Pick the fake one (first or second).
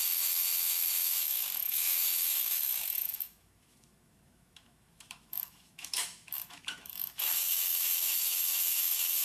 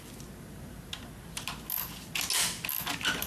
first